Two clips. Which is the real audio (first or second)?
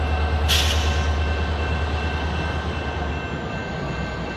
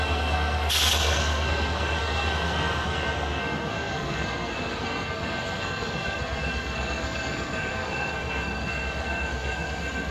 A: first